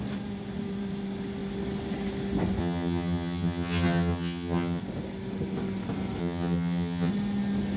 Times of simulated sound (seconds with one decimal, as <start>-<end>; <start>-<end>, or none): 2.6-4.8; 6.2-7.1